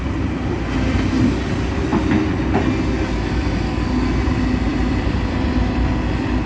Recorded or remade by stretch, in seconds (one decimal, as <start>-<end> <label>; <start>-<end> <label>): 0.0-4.7 recorded; 4.7-5.7 remade; 5.7-6.5 recorded